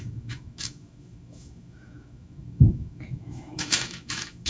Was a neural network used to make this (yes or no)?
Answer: yes